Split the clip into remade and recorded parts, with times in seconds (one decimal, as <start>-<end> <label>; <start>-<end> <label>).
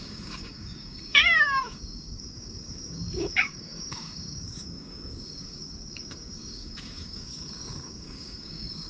0.0-8.9 remade